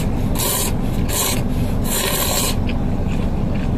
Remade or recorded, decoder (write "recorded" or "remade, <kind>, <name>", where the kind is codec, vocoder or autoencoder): recorded